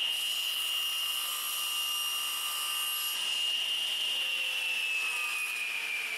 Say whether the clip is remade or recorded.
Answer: recorded